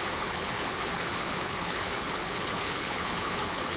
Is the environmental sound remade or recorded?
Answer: remade